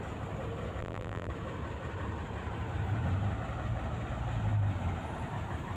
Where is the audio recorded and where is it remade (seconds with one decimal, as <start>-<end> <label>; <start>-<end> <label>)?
0.0-0.8 recorded; 0.8-1.3 remade; 1.3-5.8 recorded